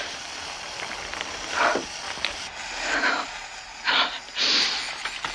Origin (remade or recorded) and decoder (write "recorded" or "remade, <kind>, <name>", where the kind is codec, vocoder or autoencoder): recorded